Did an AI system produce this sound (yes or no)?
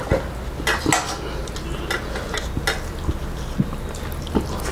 no